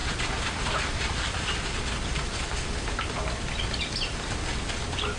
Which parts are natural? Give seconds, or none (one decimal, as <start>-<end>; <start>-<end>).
0.0-5.2